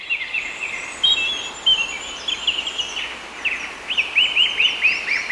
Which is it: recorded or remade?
recorded